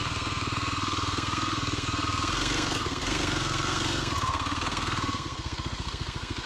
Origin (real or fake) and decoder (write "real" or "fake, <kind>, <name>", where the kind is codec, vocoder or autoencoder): fake, codec, SNAC